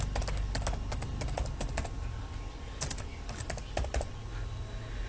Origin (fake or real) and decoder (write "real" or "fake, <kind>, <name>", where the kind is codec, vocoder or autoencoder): real